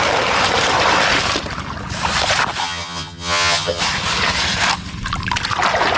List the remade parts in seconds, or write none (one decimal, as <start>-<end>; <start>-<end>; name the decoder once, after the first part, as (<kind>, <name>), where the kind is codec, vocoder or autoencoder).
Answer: 2.6-3.8 (vocoder, HiFi-GAN)